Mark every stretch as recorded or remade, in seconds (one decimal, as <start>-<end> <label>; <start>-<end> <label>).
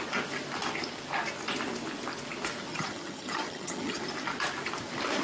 0.0-2.7 recorded; 2.7-4.0 remade; 4.0-5.2 recorded